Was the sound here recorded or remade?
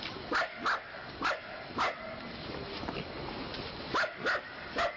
recorded